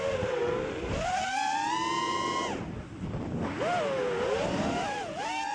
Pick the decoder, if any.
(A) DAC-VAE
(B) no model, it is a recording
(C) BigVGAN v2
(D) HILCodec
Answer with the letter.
B